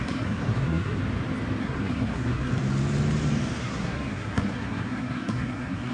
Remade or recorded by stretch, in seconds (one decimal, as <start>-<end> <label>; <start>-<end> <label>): 0.0-1.0 remade; 1.0-1.6 recorded; 1.6-2.5 remade; 2.5-3.6 recorded; 3.6-5.9 remade